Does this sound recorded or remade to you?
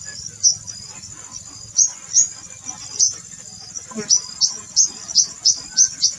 recorded